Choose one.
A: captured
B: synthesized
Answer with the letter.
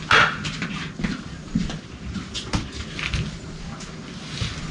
A